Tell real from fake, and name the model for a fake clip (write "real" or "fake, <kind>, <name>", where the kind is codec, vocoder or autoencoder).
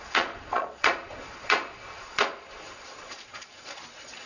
fake, vocoder, Vocos